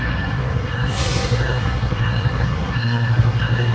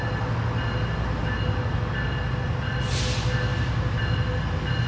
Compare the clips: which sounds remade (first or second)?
first